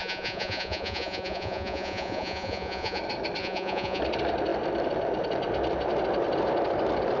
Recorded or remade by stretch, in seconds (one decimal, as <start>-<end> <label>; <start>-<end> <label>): 0.0-3.0 remade; 3.0-3.4 recorded; 3.4-4.0 remade; 4.0-7.2 recorded